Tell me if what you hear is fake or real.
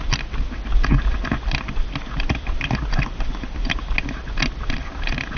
real